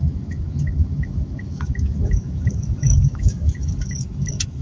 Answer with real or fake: fake